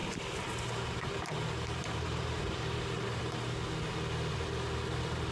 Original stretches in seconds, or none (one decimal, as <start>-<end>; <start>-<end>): 3.2-5.3